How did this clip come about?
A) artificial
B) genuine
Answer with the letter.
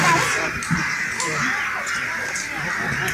B